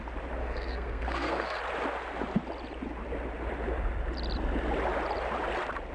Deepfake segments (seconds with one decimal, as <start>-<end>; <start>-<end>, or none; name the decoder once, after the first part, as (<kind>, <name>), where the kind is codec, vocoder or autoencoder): 0.4-1.6 (codec, SNAC)

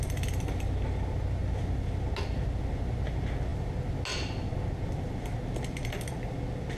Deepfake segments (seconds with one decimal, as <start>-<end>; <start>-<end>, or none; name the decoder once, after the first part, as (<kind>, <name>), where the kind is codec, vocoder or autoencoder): none

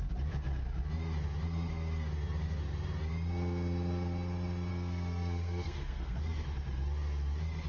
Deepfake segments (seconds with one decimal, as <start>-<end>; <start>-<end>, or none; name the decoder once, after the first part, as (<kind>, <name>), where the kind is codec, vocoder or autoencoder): 4.7-6.2 (codec, SNAC)

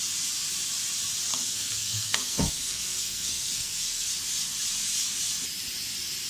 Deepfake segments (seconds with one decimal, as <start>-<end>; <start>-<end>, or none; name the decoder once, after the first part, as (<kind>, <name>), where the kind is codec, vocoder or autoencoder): 1.3-4.1 (codec, SNAC)